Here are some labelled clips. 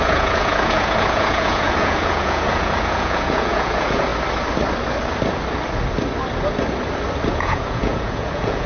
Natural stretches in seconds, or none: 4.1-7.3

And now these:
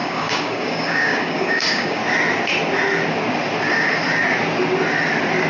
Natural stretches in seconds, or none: 2.0-5.5